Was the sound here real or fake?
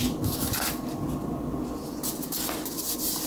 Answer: real